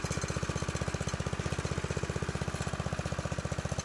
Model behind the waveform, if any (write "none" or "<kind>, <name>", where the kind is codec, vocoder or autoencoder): none